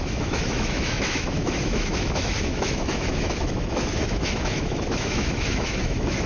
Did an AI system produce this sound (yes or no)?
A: yes